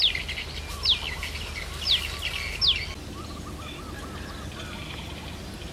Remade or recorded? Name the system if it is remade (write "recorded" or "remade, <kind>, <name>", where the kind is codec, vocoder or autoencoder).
recorded